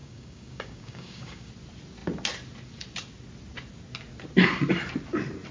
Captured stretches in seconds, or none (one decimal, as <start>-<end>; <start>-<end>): 1.5-5.5

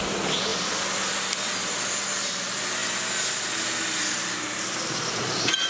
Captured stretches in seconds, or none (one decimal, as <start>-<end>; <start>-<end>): 0.0-0.5; 1.9-5.7

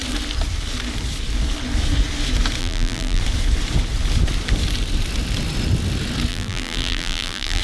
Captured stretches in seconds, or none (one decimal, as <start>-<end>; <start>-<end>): 0.0-2.6; 3.2-6.3

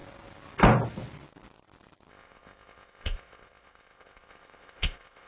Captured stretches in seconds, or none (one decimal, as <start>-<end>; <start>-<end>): 0.0-2.1

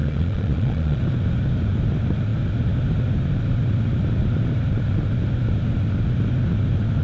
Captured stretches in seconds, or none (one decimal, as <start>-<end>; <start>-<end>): 1.0-7.0

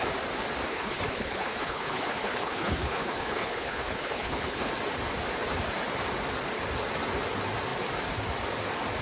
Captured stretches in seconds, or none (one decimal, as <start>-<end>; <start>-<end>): 0.0-0.7; 4.7-9.0